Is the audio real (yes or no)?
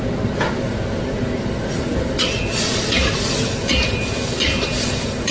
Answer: yes